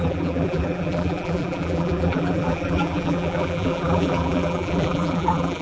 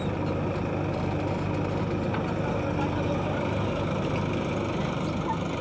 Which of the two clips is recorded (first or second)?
second